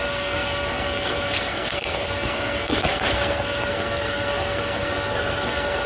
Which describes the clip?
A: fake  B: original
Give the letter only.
A